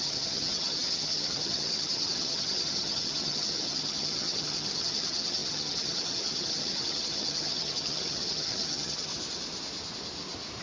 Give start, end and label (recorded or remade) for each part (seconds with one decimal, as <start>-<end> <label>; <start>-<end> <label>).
0.0-9.1 remade; 9.1-10.6 recorded